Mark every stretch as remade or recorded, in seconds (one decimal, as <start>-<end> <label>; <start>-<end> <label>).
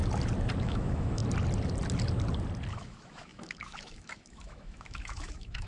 0.0-0.6 recorded; 0.6-1.2 remade; 1.2-2.7 recorded; 2.7-5.7 remade